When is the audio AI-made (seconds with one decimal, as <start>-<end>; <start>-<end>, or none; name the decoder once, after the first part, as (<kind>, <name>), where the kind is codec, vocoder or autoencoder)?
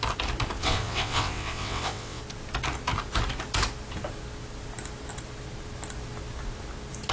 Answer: 0.6-2.2 (vocoder, WaveNeXt)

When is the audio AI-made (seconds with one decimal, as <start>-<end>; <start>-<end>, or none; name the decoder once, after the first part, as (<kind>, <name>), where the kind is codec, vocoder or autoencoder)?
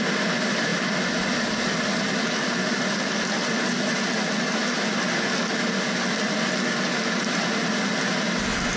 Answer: none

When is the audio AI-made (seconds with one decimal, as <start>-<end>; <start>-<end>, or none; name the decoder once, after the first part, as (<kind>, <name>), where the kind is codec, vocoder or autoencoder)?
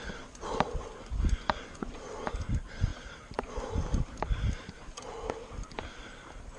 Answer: 1.0-2.1 (vocoder, Vocos)